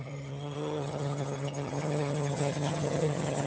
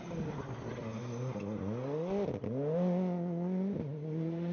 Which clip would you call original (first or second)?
second